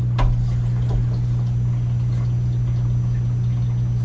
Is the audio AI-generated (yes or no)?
no